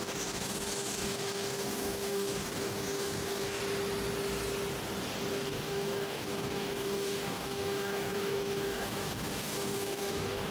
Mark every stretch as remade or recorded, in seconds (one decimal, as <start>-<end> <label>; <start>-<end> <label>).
0.0-3.6 remade; 3.6-5.3 recorded; 5.3-10.5 remade